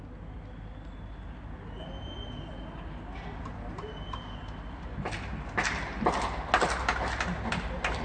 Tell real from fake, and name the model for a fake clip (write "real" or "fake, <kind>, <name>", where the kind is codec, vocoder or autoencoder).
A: real